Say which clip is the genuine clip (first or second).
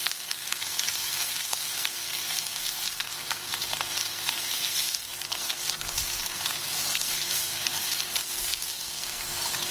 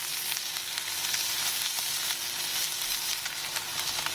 second